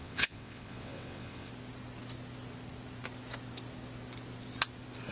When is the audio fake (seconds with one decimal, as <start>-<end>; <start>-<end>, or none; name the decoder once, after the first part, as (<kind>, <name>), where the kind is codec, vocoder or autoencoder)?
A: 0.0-1.5 (vocoder, WaveNeXt)